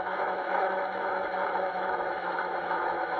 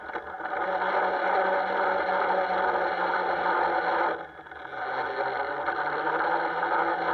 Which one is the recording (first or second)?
second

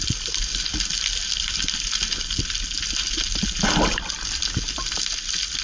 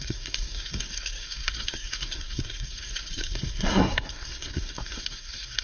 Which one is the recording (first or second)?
first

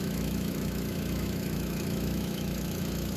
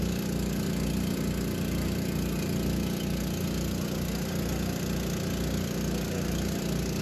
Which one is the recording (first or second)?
second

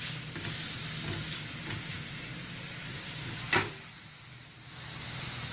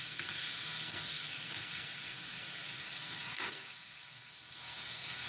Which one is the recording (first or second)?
first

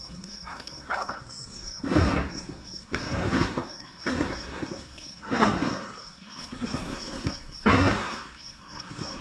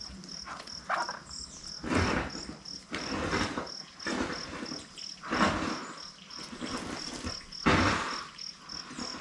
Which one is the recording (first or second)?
second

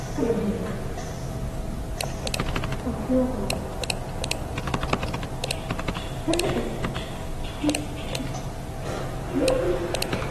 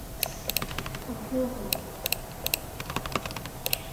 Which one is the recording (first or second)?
first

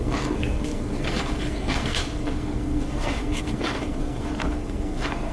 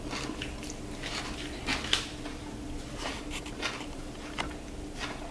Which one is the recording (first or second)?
second